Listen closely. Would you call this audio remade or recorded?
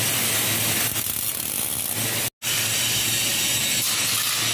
recorded